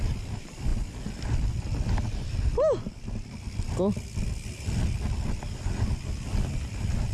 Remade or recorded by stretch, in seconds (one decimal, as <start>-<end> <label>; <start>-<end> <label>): 0.0-7.1 recorded